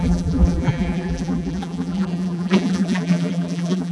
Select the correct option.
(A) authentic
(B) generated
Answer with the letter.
B